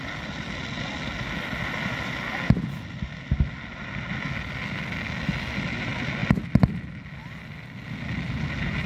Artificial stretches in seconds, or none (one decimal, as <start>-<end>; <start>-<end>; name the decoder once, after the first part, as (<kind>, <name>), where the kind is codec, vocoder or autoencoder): none